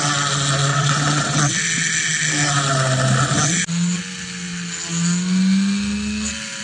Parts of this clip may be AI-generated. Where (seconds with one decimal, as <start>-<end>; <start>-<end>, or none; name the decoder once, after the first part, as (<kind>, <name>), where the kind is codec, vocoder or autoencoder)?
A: 0.7-1.5 (vocoder, WaveNeXt)